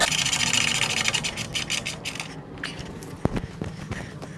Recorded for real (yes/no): yes